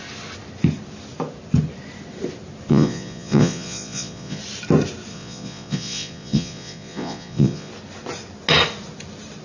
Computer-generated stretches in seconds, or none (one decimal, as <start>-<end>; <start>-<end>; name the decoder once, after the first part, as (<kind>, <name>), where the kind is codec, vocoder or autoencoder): 2.7-4.4 (vocoder, Vocos); 5.1-7.7